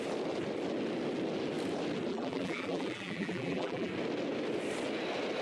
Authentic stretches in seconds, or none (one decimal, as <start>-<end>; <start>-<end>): 0.0-2.1; 3.9-5.4